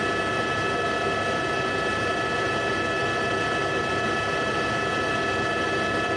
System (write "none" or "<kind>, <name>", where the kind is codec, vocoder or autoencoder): none